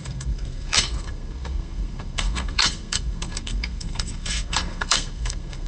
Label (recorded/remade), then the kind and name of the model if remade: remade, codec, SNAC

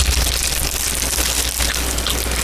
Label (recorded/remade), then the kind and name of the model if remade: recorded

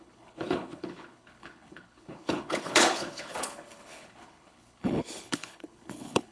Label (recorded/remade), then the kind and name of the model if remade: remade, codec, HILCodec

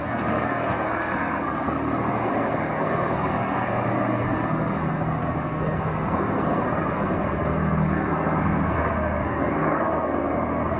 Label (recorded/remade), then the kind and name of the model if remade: remade, codec, SNAC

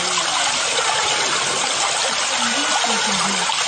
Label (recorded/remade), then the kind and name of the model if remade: recorded